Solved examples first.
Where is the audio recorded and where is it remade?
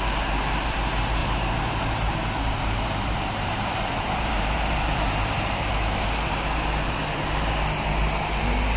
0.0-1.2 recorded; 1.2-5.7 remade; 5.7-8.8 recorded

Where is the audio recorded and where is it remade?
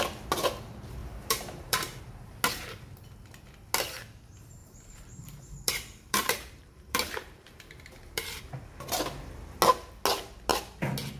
0.0-1.0 recorded; 1.0-2.0 remade; 2.0-4.6 recorded; 4.6-8.4 remade; 8.4-11.2 recorded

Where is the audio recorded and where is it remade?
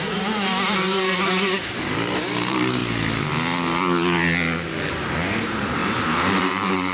0.0-2.8 remade; 2.8-4.9 recorded; 4.9-6.9 remade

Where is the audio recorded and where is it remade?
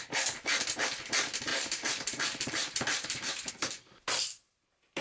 0.0-1.5 recorded; 1.5-3.5 remade; 3.5-5.0 recorded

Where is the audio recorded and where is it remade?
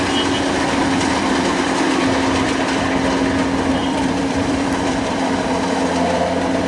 0.0-3.8 recorded; 3.8-5.5 remade; 5.5-6.7 recorded